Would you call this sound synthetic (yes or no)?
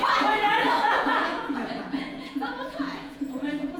yes